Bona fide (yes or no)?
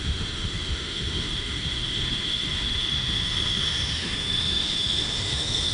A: no